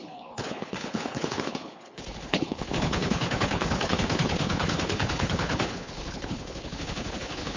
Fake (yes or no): yes